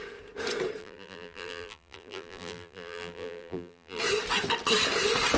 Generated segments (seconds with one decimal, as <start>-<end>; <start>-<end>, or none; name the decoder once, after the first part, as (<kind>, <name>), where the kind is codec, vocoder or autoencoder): 0.8-4.0 (vocoder, BigVGAN v2)